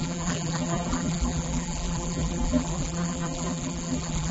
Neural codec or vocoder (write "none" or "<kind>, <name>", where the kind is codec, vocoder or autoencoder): vocoder, BigVGAN v2